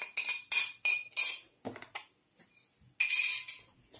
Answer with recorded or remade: recorded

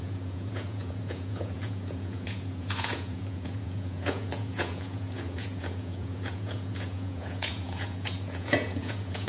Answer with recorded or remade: remade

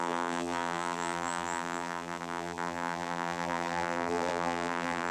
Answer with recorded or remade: remade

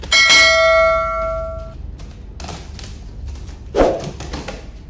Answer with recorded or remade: recorded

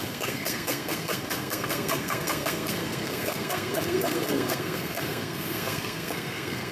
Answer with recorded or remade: remade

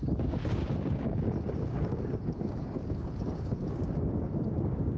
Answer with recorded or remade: remade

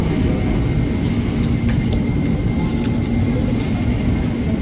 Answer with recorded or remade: recorded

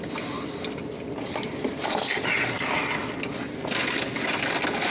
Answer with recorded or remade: recorded